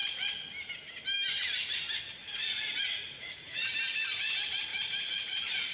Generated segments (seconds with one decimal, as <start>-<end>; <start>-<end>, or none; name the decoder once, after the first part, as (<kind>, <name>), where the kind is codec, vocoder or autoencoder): 2.2-3.7 (vocoder, Vocos); 4.7-5.7